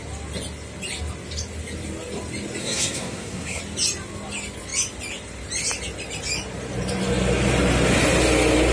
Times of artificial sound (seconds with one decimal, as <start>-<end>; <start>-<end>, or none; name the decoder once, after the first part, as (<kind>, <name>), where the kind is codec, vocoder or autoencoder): 2.6-3.6 (codec, SNAC)